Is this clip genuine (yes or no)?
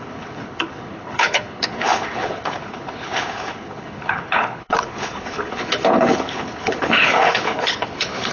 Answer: no